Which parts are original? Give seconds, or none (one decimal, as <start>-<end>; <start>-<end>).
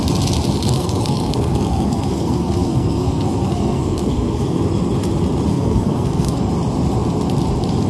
0.0-0.6; 4.6-5.5; 6.5-7.9